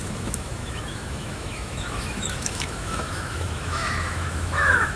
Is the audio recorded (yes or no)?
no